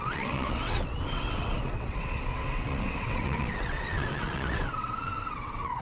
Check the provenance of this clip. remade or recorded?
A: remade